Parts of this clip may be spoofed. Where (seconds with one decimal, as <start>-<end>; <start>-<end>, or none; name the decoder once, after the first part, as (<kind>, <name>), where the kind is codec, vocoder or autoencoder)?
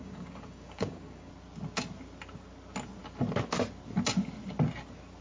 0.0-1.3 (codec, DAC)